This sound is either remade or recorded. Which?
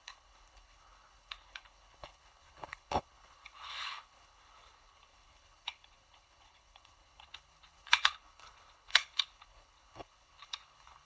remade